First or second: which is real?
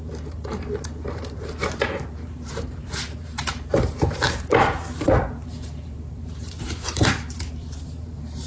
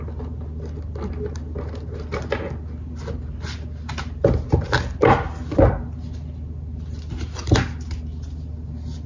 second